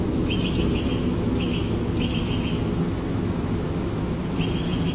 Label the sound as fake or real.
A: fake